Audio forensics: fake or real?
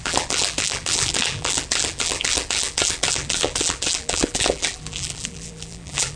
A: fake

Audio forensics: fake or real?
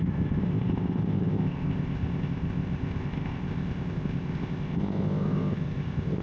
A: fake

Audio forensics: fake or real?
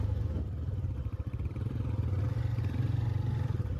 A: real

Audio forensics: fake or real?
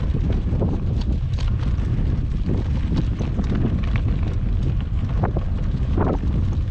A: fake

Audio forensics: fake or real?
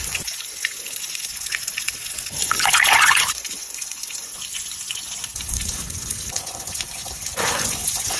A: fake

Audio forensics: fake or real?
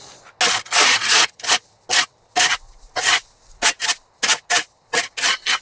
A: real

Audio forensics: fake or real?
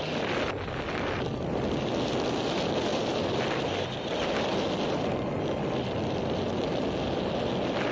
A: real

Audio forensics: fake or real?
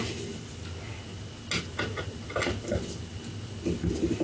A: real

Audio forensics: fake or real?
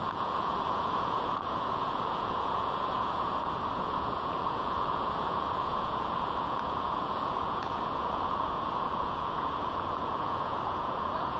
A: fake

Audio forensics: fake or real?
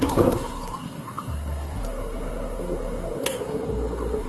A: fake